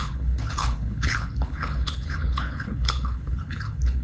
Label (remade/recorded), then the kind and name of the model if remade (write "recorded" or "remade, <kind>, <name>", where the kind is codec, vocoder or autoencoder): remade, codec, HILCodec